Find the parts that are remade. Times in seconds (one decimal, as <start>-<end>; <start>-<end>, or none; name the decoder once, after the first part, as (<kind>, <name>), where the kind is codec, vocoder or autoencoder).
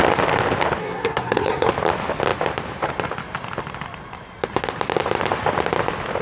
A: 0.8-1.7 (codec, SNAC)